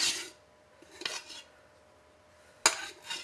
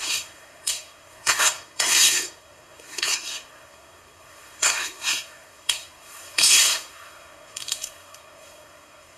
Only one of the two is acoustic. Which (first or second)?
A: first